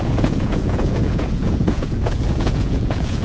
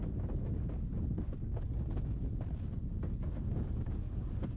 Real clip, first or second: second